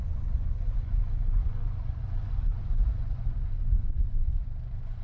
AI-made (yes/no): yes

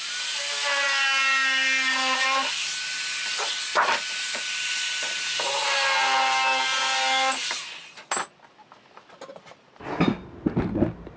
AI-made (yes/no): no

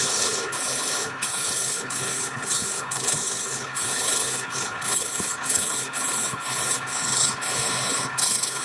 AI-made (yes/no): yes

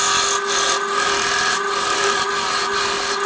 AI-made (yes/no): no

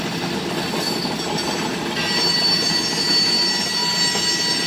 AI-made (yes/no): no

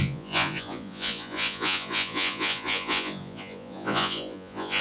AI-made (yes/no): yes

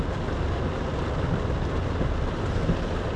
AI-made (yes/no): no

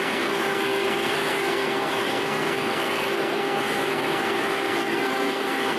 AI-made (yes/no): yes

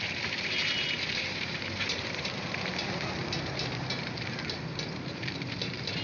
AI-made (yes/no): yes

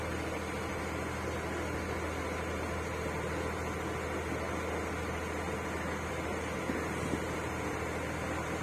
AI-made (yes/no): no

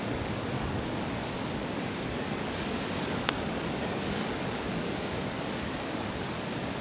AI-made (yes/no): yes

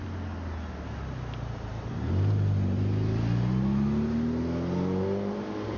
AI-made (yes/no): no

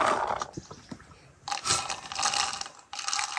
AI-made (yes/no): no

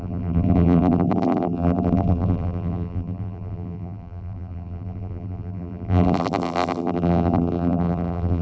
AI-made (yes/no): yes